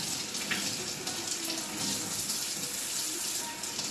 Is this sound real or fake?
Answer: real